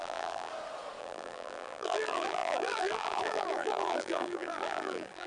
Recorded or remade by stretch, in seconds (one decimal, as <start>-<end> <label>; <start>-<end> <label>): 0.0-0.5 remade; 0.5-1.0 recorded; 1.0-5.3 remade